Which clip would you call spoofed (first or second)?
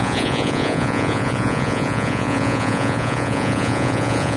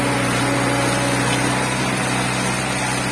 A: first